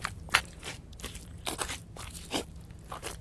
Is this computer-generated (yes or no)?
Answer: yes